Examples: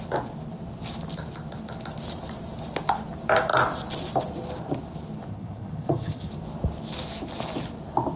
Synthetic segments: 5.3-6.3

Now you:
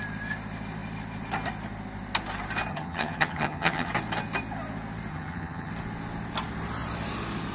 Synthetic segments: 2.7-3.9; 5.1-5.7

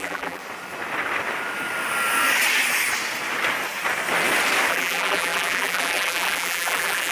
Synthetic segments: 0.0-0.4; 4.7-7.1

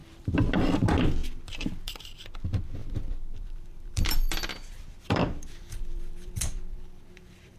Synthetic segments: 0.0-0.5; 1.2-2.2; 2.8-7.6

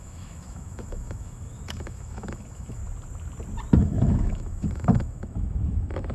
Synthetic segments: 0.0-2.8; 3.8-6.1